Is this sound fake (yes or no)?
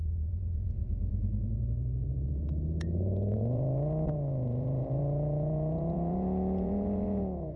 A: yes